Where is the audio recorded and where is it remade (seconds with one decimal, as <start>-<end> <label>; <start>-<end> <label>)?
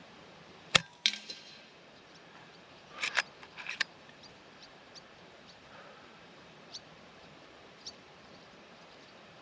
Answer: 0.0-0.8 remade; 0.8-1.5 recorded; 1.5-9.4 remade